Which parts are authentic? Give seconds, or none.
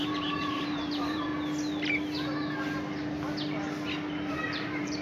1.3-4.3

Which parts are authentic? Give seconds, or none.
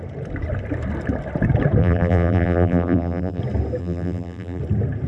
0.0-1.8; 3.4-3.8; 4.6-5.1